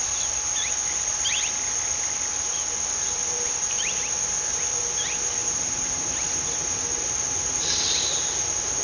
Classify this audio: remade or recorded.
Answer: recorded